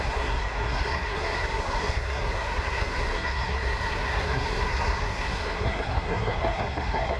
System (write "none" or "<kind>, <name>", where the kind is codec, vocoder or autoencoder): codec, SNAC